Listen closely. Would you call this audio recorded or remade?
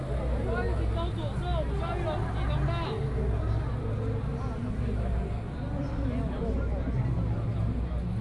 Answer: recorded